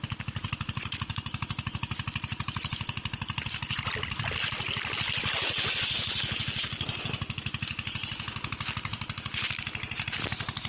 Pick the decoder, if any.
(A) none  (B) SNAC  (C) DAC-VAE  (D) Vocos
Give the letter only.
A